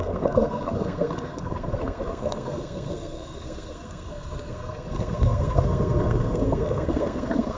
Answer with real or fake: fake